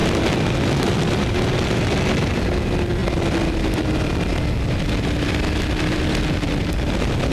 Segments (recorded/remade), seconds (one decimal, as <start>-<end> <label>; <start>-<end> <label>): 0.0-7.3 remade